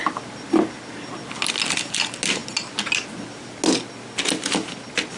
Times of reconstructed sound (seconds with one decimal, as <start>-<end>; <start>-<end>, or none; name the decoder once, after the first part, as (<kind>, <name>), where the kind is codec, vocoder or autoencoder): none